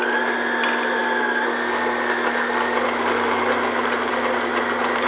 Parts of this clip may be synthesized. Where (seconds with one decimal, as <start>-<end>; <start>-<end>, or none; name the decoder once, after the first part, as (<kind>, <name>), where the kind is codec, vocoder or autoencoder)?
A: none